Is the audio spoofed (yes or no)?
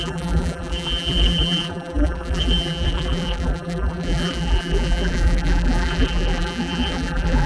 yes